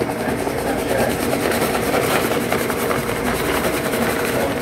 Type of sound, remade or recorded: remade